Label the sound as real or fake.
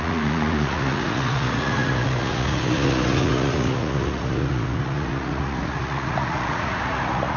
fake